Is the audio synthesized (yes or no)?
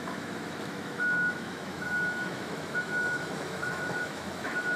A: yes